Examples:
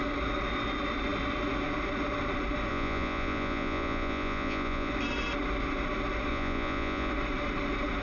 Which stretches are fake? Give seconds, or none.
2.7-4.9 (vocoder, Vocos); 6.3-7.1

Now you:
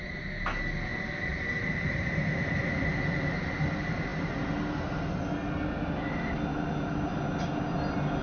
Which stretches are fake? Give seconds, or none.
0.9-2.8 (vocoder, BigVGAN v2)

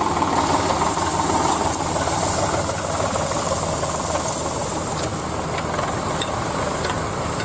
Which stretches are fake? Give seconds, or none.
none

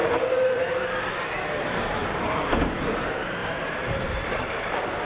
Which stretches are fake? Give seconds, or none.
2.0-2.9 (vocoder, BigVGAN v2); 3.4-5.1

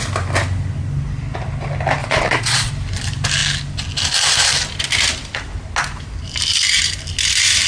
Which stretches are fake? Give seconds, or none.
2.0-2.7 (vocoder, Vocos)

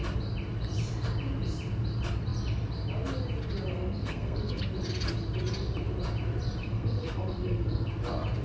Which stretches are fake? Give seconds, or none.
3.7-4.6 (codec, SNAC); 6.6-7.9

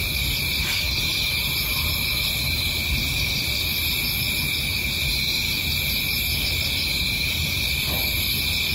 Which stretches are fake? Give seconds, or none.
none

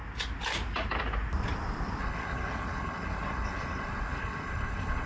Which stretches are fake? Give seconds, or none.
2.0-5.1 (codec, HILCodec)